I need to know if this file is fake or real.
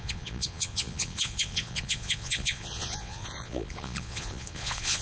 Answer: fake